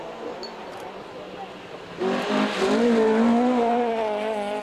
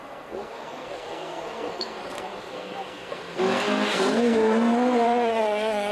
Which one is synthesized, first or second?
second